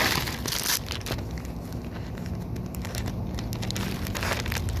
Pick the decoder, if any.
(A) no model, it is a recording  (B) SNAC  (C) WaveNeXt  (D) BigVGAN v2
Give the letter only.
A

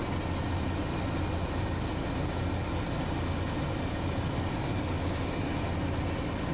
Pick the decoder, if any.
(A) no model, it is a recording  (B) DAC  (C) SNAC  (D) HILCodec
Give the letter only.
A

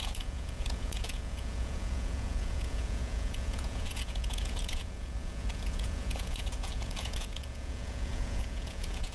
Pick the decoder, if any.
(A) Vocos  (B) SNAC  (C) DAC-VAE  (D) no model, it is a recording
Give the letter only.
A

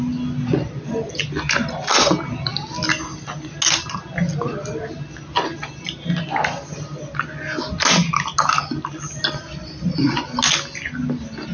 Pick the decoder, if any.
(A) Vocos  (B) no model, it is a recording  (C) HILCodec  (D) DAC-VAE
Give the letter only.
B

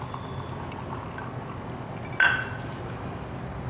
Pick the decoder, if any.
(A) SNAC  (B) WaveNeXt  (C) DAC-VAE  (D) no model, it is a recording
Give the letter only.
D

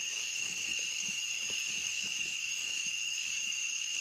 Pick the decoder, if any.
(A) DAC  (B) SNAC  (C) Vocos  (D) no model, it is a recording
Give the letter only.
A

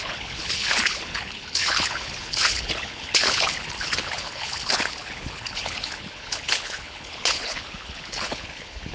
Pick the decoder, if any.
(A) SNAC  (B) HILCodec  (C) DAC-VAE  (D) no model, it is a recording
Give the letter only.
B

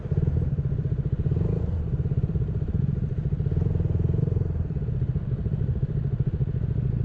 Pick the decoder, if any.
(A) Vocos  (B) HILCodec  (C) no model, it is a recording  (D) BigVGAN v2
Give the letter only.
C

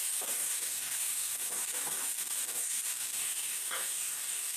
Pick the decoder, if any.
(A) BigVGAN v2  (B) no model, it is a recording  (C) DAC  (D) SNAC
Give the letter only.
C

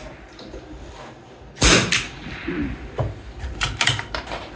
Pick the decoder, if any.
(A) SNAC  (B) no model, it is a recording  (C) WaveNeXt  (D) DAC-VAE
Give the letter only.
B